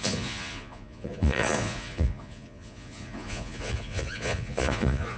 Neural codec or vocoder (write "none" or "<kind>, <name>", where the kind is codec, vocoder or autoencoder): vocoder, Vocos